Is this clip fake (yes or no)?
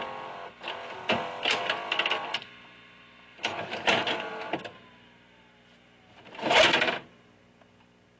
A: no